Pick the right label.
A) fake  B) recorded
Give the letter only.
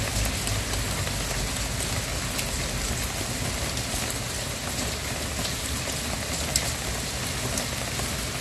B